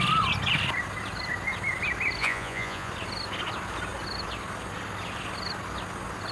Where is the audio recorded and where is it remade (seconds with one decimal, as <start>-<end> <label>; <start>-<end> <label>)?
0.0-2.2 recorded; 2.2-2.9 remade; 2.9-6.3 recorded